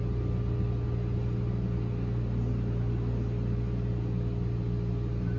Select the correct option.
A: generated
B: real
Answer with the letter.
B